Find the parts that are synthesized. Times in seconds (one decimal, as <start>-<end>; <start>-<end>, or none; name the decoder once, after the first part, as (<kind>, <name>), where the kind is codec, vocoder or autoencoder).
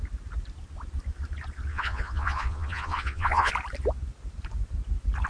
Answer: 1.7-3.5 (vocoder, Vocos)